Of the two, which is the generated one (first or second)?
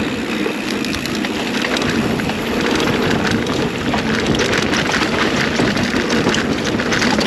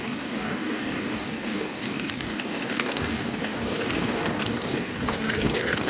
second